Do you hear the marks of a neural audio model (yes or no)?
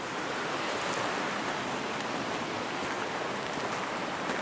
no